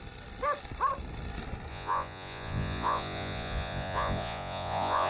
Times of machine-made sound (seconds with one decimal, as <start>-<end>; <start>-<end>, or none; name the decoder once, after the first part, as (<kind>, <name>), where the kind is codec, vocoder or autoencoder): 1.7-5.1 (vocoder, Vocos)